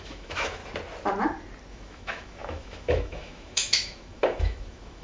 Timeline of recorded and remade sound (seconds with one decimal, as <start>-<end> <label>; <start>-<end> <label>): 0.0-0.6 remade; 0.6-1.7 recorded; 1.7-5.0 remade